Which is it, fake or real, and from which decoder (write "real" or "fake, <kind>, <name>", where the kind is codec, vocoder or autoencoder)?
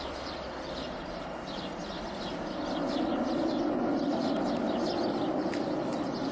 real